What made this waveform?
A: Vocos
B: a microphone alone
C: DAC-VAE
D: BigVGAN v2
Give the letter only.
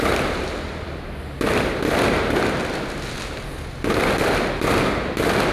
B